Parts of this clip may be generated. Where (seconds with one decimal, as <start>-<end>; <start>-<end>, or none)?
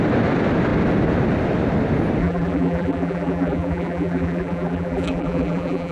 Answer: 2.2-5.9